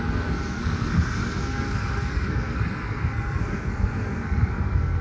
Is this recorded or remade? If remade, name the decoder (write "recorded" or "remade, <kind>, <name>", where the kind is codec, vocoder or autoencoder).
remade, codec, SNAC